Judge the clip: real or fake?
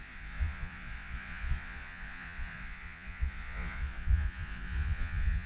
fake